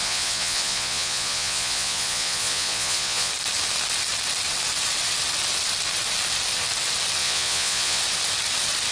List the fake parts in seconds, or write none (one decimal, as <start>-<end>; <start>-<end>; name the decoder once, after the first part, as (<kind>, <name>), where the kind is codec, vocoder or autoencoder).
0.0-3.3 (vocoder, Vocos); 7.2-8.0